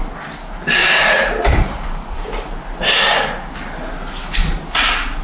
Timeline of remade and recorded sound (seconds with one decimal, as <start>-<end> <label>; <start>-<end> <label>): 0.0-0.8 recorded; 0.8-3.0 remade; 3.0-5.2 recorded